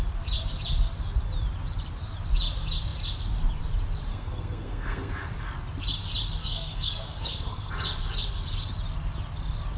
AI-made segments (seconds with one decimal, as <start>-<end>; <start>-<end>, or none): 4.1-5.1; 6.4-7.7